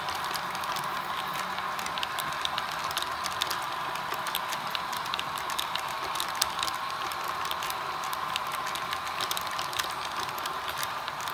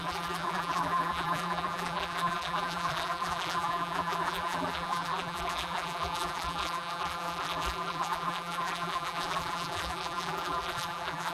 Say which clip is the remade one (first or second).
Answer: second